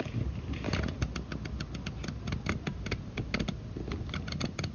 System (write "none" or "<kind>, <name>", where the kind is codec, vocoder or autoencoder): none